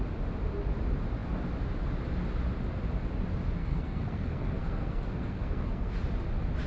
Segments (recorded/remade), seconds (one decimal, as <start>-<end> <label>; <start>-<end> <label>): 0.0-3.6 recorded; 3.6-6.0 remade; 6.0-6.7 recorded